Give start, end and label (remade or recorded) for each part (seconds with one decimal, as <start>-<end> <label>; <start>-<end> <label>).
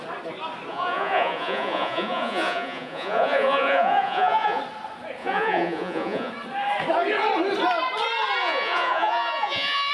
0.0-0.7 recorded; 0.7-4.6 remade; 4.6-5.2 recorded; 5.2-6.3 remade; 6.3-8.4 recorded; 8.4-9.9 remade